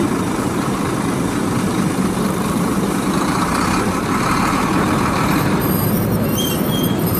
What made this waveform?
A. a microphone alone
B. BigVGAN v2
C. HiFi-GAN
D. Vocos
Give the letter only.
B